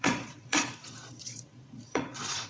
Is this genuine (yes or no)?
no